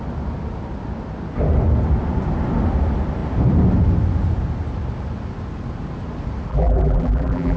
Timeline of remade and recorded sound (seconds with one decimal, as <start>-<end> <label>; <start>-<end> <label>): 0.0-6.5 recorded; 6.5-7.6 remade

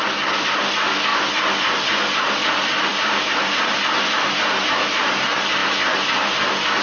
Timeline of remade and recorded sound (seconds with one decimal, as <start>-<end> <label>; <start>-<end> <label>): 0.0-2.9 recorded; 2.9-5.0 remade; 5.0-6.8 recorded

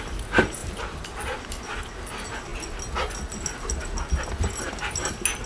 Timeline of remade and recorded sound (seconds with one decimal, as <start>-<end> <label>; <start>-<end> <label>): 0.0-0.6 recorded; 0.6-1.9 remade; 1.9-5.5 recorded